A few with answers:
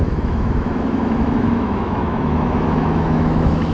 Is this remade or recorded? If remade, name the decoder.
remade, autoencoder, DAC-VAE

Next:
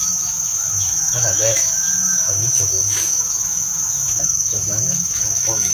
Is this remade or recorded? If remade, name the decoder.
remade, autoencoder, DAC-VAE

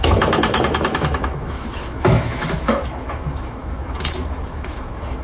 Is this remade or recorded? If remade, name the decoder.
remade, autoencoder, DAC-VAE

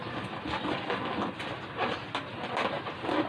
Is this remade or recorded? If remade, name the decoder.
recorded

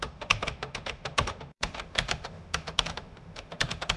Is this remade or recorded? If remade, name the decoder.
remade, autoencoder, DAC-VAE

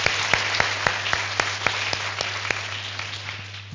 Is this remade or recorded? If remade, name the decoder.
recorded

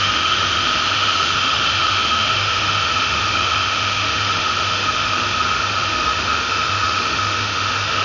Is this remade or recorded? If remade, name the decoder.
remade, autoencoder, DAC-VAE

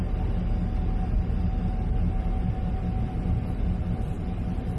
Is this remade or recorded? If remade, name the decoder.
recorded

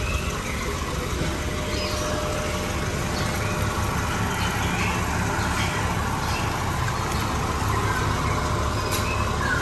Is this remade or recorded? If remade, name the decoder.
recorded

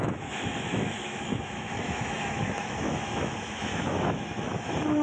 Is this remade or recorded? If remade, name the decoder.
remade, autoencoder, DAC-VAE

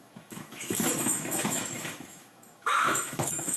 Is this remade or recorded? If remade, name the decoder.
remade, autoencoder, DAC-VAE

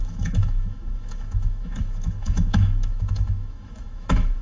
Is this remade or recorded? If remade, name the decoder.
remade, autoencoder, DAC-VAE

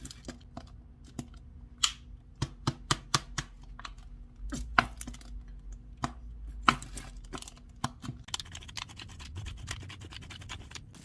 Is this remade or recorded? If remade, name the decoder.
recorded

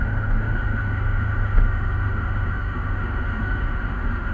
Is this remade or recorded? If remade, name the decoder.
remade, autoencoder, DAC-VAE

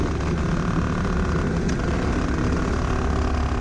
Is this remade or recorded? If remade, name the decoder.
recorded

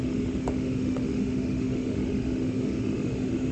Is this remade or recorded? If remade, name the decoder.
remade, autoencoder, DAC-VAE